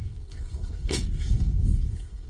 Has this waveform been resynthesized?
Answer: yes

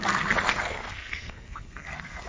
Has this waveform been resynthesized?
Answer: yes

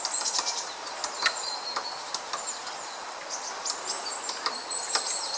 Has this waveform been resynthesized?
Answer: no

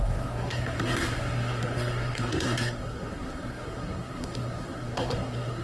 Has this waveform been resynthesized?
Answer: yes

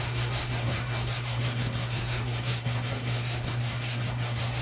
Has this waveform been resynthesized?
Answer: yes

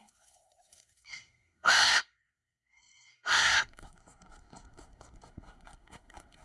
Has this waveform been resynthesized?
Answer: yes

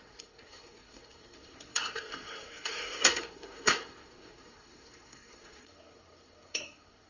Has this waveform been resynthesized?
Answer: yes